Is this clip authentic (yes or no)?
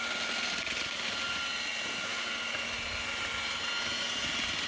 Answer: yes